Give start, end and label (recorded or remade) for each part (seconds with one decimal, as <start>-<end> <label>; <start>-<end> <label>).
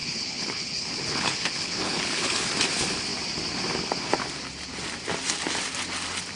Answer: 0.0-2.5 remade; 2.5-6.4 recorded